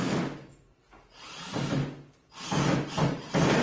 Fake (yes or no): no